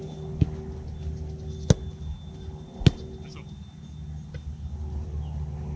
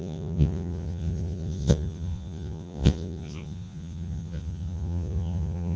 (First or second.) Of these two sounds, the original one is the first